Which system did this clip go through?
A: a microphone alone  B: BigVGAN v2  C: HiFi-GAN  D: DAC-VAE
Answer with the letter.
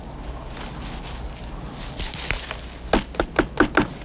A